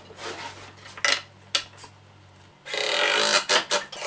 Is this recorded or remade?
recorded